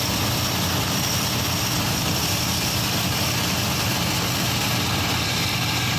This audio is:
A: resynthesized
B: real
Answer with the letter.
A